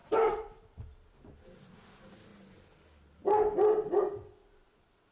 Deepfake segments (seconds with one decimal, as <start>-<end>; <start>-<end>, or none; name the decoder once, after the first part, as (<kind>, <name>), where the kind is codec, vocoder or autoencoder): none